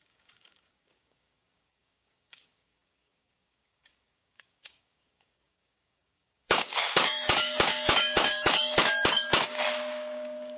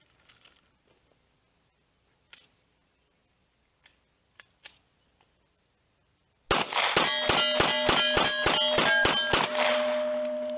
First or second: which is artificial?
first